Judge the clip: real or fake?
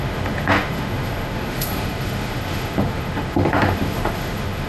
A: fake